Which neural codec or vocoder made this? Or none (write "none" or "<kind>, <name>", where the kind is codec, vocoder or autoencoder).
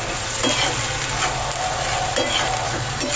none